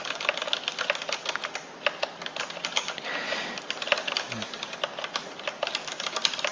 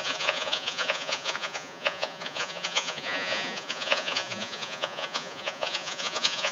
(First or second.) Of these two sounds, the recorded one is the first